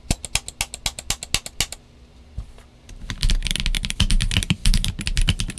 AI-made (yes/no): no